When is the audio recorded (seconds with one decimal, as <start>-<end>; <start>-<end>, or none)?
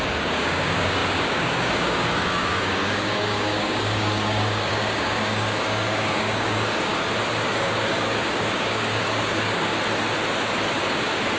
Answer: 6.9-7.5; 9.7-10.8